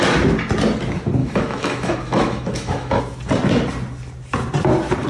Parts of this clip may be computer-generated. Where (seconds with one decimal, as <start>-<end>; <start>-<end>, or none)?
1.2-3.0